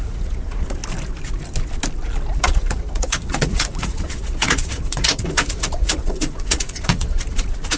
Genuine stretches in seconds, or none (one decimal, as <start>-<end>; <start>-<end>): 0.8-2.4